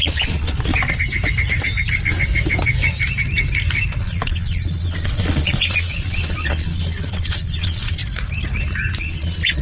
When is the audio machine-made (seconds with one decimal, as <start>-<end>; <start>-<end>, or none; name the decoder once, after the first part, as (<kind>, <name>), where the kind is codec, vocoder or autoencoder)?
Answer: 0.0-0.7 (vocoder, Vocos); 4.0-8.0; 9.0-9.6